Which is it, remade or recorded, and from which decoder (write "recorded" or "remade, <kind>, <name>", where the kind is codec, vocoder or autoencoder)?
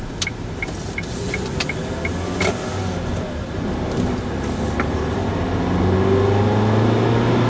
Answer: recorded